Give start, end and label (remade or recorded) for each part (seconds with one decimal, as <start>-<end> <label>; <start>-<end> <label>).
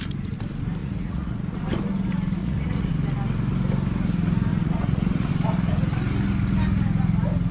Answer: 0.0-0.8 recorded; 0.8-1.6 remade; 1.6-2.4 recorded; 2.4-2.9 remade; 2.9-4.5 recorded; 4.5-5.3 remade; 5.3-7.5 recorded